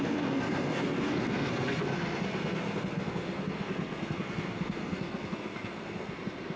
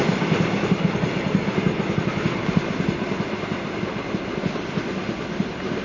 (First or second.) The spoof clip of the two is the first